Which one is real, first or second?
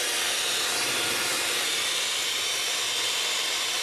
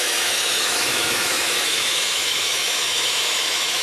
first